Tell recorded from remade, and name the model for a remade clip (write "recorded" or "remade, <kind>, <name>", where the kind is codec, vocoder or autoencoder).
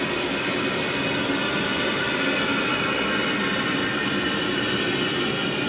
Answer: recorded